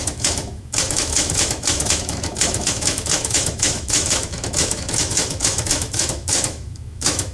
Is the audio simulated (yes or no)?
yes